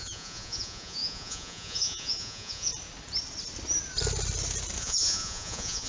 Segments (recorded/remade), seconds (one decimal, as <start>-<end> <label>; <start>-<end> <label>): 0.0-2.7 remade; 2.7-4.8 recorded; 4.8-5.9 remade